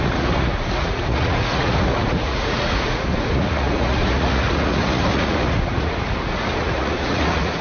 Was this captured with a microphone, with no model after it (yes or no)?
no